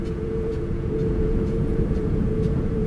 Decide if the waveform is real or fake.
fake